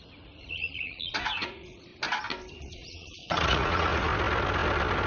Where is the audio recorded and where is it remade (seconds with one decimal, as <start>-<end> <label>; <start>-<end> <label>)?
0.0-1.9 remade; 1.9-2.5 recorded; 2.5-4.1 remade; 4.1-5.1 recorded